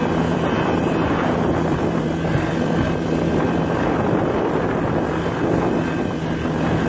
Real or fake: real